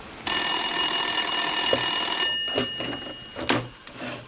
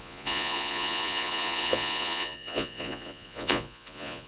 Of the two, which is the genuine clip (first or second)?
first